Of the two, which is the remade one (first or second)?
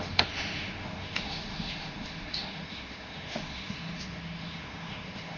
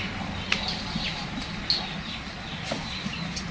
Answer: first